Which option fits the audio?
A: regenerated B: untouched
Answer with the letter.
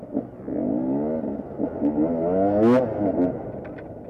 B